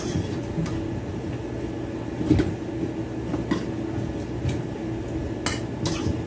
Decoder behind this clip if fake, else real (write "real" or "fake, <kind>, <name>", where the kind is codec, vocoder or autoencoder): real